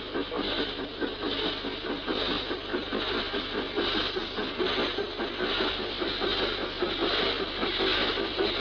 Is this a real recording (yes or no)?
yes